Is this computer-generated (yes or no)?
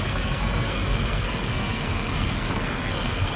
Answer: yes